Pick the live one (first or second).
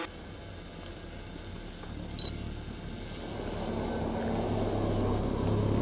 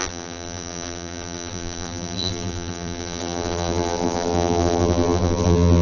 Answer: first